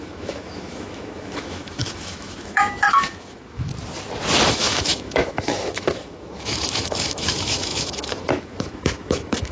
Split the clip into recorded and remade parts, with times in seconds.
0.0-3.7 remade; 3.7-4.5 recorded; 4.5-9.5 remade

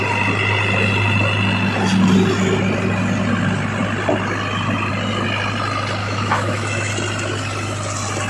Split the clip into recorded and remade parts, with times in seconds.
0.0-6.0 recorded; 6.0-6.9 remade; 6.9-8.3 recorded

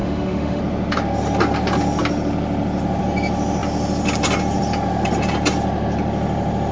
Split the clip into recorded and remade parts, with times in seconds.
0.0-0.6 remade; 0.6-6.7 recorded

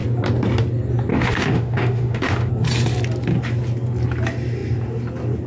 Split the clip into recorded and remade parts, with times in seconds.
0.0-1.1 recorded; 1.1-2.5 remade; 2.5-5.5 recorded

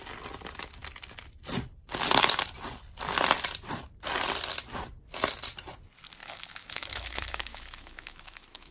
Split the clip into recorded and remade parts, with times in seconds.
0.0-6.2 recorded; 6.2-8.7 remade

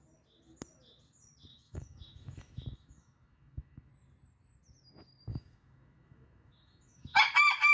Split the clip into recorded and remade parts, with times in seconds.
0.0-1.5 recorded; 1.5-3.9 remade; 3.9-5.3 recorded; 5.3-7.2 remade; 7.2-7.7 recorded

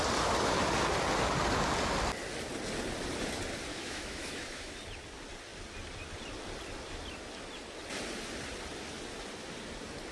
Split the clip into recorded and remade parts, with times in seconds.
0.0-3.7 recorded; 3.7-4.7 remade; 4.7-10.1 recorded

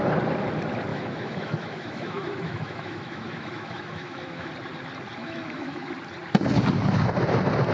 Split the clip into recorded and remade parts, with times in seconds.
0.0-0.9 recorded; 0.9-4.5 remade; 4.5-5.2 recorded; 5.2-5.9 remade; 5.9-7.7 recorded